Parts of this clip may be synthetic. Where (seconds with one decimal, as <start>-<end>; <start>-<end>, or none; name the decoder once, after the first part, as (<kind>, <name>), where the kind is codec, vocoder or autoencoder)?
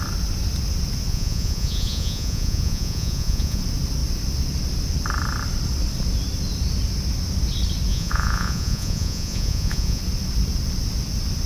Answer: 1.1-3.6 (vocoder, Vocos); 7.9-10.0